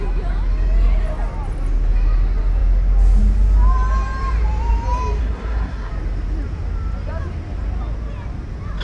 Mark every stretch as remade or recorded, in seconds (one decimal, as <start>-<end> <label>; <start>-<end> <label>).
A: 0.0-5.2 recorded; 5.2-5.9 remade; 5.9-8.8 recorded